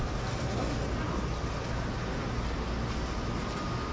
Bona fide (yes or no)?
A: yes